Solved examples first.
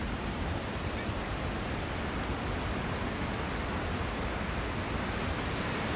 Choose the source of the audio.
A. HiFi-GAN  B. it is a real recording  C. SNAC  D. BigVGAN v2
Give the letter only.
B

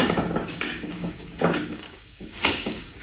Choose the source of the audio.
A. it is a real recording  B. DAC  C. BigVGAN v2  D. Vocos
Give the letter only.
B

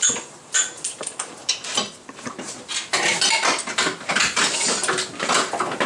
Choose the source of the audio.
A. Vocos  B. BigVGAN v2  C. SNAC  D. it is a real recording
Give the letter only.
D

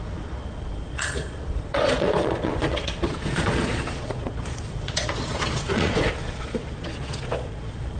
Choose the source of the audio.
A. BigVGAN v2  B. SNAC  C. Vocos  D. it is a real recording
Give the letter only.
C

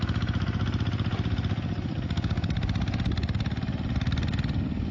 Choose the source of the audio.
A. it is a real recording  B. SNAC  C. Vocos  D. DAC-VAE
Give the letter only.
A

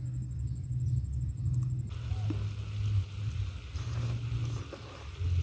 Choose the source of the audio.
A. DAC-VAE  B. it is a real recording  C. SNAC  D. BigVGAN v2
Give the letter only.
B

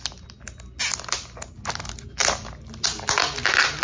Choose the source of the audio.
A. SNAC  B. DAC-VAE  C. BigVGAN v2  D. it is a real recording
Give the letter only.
D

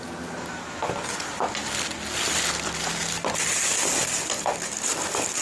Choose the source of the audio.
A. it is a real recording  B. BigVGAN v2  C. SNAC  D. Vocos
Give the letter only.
A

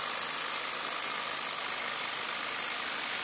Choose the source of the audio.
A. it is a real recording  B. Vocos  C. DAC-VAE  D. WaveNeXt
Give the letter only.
A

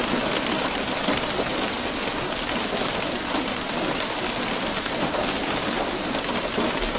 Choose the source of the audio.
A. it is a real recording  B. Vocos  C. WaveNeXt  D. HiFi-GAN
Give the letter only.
A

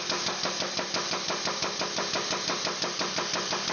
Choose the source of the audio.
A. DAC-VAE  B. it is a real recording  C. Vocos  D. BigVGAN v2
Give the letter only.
B